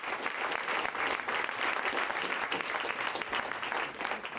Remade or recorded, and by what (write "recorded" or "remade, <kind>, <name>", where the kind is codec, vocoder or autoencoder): recorded